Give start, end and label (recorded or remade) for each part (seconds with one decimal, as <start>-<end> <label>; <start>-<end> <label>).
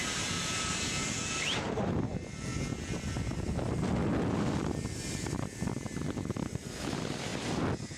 0.0-2.5 remade; 2.5-3.0 recorded; 3.0-7.3 remade; 7.3-8.0 recorded